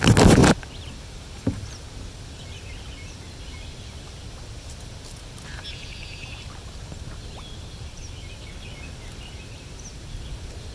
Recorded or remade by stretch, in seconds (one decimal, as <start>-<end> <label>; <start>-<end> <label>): 0.0-10.7 recorded